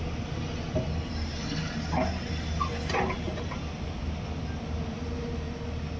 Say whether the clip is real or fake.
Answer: real